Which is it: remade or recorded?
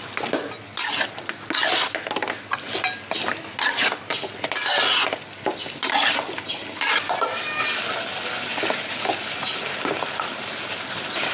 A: recorded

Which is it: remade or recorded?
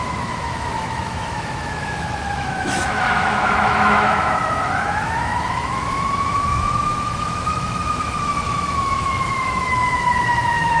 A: remade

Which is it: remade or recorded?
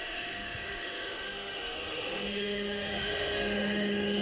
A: remade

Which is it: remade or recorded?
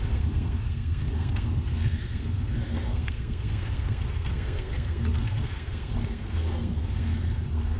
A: remade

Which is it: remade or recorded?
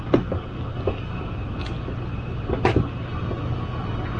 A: recorded